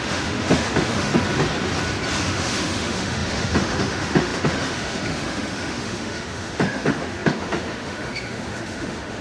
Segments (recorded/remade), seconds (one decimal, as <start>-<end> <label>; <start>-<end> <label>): 0.0-1.1 remade; 1.1-2.2 recorded; 2.2-9.2 remade